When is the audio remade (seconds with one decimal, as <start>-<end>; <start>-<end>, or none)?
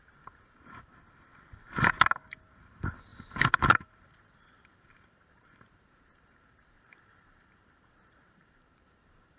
0.0-0.9; 2.6-9.4